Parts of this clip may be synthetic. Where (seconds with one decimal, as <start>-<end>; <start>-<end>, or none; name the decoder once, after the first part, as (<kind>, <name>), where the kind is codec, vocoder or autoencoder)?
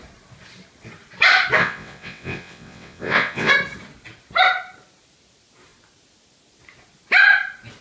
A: 1.6-3.5 (vocoder, WaveNeXt)